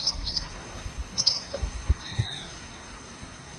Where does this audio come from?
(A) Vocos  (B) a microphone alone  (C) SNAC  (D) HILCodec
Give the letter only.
C